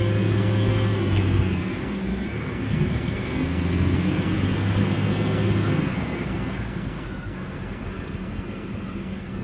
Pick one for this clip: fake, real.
fake